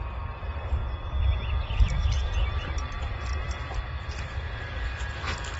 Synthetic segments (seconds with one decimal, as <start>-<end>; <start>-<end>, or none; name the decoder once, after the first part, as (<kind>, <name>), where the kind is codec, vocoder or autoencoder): none